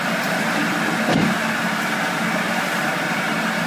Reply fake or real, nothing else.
real